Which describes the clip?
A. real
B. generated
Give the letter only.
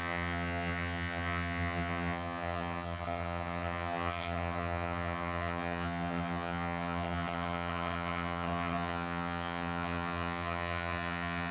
B